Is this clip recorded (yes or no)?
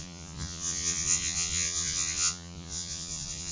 no